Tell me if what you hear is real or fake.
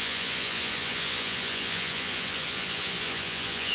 fake